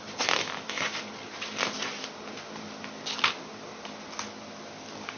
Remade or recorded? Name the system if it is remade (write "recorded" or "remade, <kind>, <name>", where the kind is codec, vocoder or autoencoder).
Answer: recorded